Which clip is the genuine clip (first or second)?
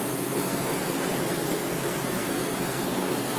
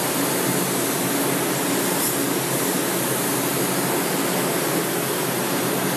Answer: second